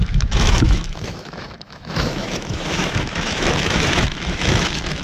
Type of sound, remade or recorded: remade